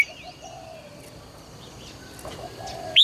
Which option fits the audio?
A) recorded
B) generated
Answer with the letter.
A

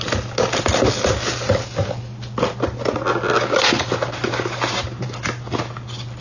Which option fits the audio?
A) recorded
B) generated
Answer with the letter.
A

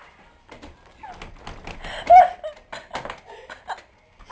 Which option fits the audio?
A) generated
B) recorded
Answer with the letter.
B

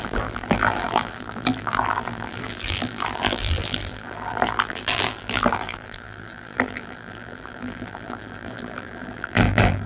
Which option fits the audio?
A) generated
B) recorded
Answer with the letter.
A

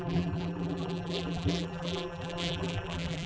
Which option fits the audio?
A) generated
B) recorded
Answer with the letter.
A